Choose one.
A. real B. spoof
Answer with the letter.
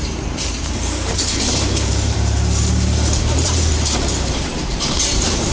B